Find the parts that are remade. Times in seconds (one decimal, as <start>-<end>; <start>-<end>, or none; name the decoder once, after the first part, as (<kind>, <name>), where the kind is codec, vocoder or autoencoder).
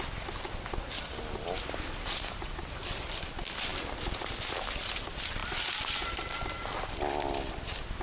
none